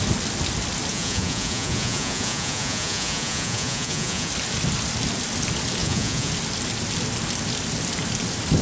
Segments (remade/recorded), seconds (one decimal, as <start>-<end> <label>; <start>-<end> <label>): 0.0-0.9 recorded; 0.9-4.3 remade; 4.3-5.8 recorded; 5.8-6.3 remade; 6.3-8.6 recorded